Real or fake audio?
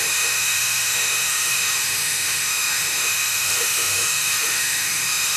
fake